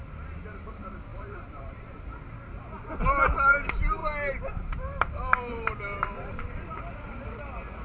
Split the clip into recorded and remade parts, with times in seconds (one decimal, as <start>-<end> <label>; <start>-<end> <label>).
0.0-1.1 recorded; 1.1-2.0 remade; 2.0-4.0 recorded; 4.0-6.8 remade; 6.8-7.8 recorded